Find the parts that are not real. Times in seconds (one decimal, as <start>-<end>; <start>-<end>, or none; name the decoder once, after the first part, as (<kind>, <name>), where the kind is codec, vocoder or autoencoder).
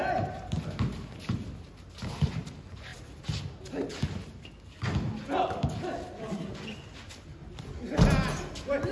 none